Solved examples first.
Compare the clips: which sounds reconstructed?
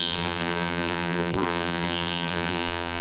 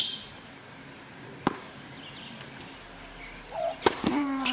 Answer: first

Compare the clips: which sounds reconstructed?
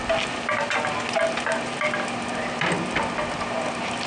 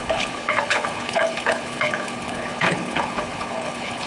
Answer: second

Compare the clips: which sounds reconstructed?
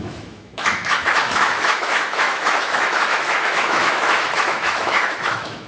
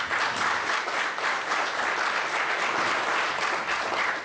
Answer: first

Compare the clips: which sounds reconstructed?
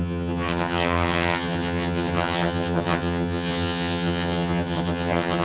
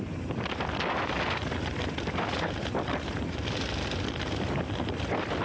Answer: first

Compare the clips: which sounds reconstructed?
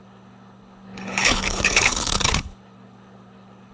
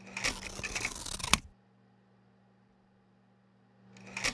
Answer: first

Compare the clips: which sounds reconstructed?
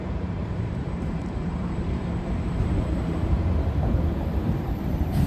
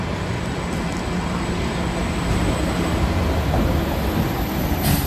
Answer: first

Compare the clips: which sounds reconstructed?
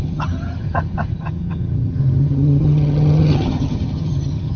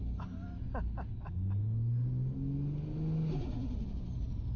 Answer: first